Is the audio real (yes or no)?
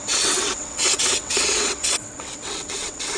no